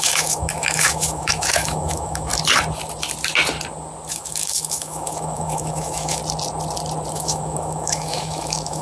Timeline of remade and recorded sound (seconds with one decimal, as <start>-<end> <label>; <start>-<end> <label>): 0.0-2.3 remade; 2.3-4.1 recorded; 4.1-6.2 remade; 6.2-7.1 recorded; 7.1-8.8 remade